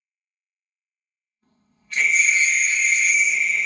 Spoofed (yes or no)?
yes